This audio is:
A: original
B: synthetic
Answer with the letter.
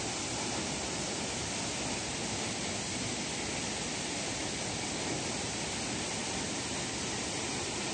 A